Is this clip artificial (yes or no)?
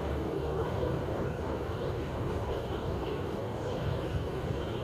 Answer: yes